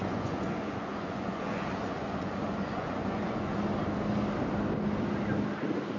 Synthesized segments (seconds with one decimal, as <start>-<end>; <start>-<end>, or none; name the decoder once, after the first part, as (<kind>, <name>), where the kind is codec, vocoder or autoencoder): 0.0-3.6 (vocoder, Vocos)